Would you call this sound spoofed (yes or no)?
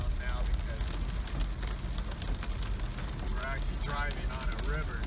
no